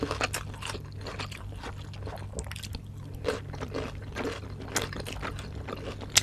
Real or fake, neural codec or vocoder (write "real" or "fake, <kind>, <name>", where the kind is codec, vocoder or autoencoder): real